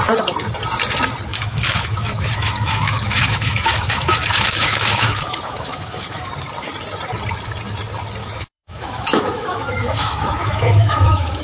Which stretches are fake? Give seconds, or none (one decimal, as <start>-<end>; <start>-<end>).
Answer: 1.3-6.3; 8.2-11.4

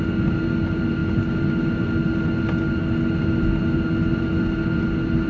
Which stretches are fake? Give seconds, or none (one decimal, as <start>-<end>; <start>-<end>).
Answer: none